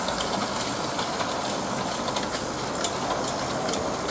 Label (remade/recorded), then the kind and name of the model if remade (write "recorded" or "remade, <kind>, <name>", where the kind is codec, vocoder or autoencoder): recorded